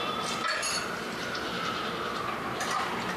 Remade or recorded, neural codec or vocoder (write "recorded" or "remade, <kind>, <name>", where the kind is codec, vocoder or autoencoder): recorded